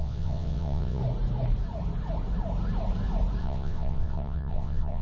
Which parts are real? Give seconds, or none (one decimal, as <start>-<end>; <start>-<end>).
1.0-3.4